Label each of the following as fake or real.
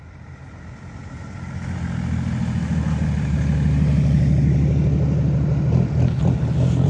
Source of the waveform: real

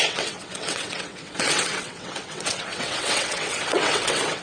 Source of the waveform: fake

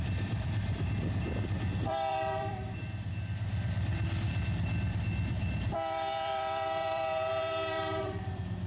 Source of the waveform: fake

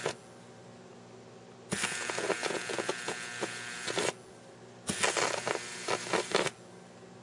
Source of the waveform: real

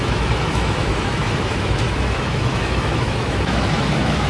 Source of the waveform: fake